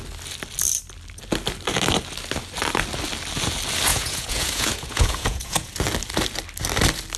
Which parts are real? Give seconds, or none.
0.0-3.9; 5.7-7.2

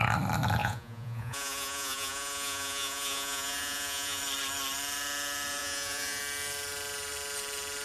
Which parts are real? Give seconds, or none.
0.0-0.6; 4.2-5.6; 6.2-7.8

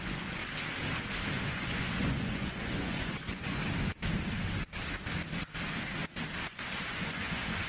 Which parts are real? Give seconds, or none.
0.4-1.3; 3.6-6.4